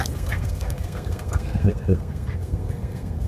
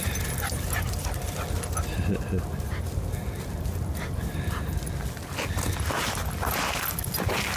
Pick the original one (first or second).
second